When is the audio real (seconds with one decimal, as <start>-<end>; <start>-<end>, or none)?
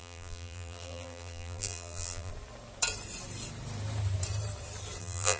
2.3-5.0